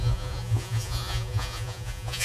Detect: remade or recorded remade